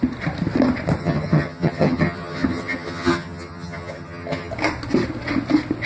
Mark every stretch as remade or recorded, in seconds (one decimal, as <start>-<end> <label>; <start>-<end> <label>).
0.0-1.0 recorded; 1.0-4.5 remade; 4.5-5.9 recorded